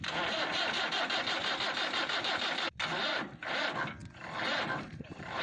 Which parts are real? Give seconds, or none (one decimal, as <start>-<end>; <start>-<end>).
0.0-1.4; 2.2-4.5